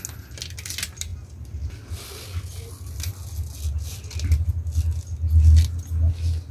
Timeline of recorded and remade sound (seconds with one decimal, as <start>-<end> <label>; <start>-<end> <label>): 0.0-6.5 recorded